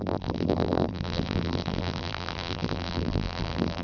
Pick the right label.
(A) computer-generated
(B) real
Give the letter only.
A